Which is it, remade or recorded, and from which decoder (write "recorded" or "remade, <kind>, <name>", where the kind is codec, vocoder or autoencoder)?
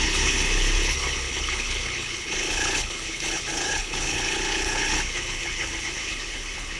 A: remade, codec, HILCodec